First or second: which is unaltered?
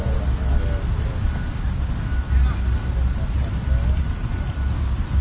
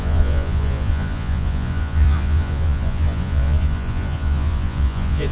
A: first